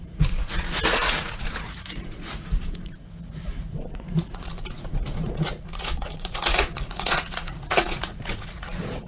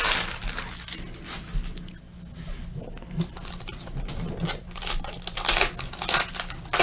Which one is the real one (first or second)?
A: second